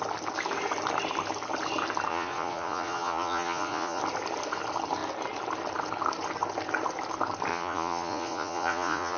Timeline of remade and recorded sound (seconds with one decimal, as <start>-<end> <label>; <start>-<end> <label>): 0.0-2.1 recorded; 2.1-4.0 remade; 4.0-7.5 recorded; 7.5-9.2 remade